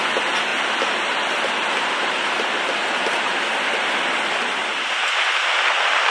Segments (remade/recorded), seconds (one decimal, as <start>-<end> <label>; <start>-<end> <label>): 0.0-0.5 recorded; 0.5-1.8 remade; 1.8-6.1 recorded